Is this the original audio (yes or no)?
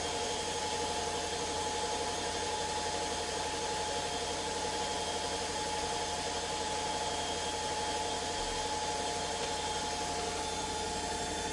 yes